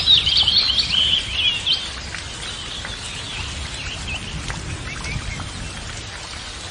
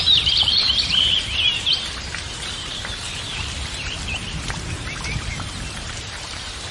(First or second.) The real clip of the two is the first